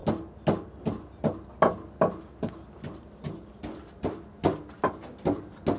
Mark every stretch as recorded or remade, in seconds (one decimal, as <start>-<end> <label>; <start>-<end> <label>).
0.0-5.8 recorded